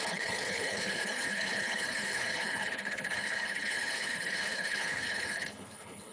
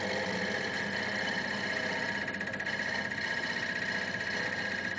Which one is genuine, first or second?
second